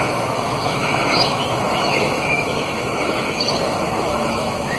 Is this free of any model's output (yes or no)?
no